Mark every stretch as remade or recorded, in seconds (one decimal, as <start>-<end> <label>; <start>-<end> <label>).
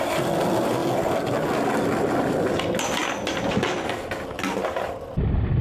0.0-5.6 recorded